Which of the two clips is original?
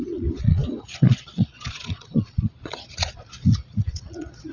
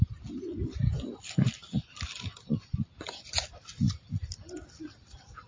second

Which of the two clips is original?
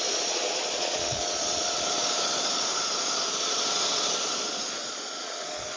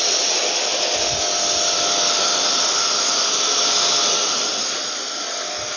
second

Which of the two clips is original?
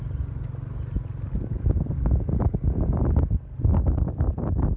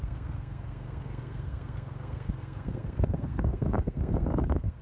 first